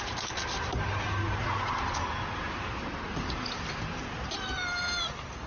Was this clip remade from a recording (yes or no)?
no